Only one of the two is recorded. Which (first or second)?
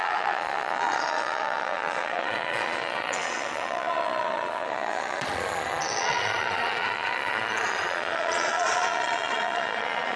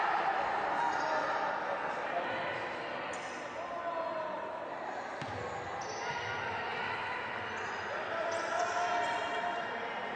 second